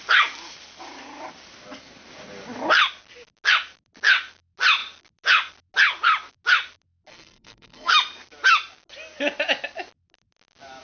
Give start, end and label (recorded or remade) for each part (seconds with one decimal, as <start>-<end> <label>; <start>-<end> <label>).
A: 0.0-7.1 recorded; 7.1-7.9 remade; 7.9-10.8 recorded